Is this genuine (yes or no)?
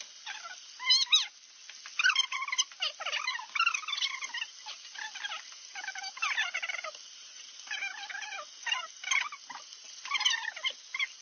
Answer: yes